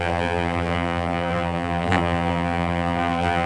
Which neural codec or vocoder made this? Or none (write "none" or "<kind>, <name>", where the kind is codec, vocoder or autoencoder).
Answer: vocoder, BigVGAN v2